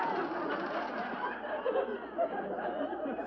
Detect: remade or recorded recorded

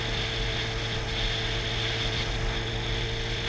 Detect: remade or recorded recorded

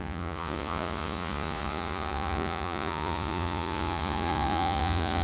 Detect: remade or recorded remade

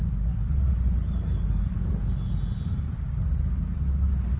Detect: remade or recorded recorded